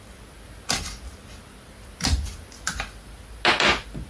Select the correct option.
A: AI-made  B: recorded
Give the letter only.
B